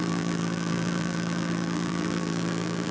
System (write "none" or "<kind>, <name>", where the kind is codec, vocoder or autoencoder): vocoder, BigVGAN v2